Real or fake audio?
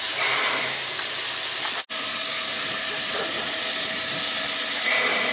real